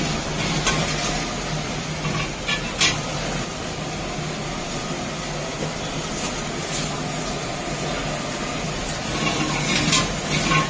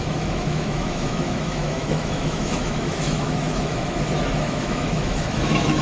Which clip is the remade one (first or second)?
second